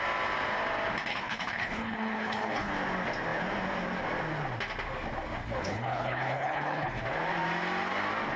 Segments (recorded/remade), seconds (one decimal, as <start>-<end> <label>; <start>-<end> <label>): 0.0-1.1 recorded; 1.1-2.7 remade; 2.7-5.6 recorded; 5.6-7.0 remade; 7.0-8.4 recorded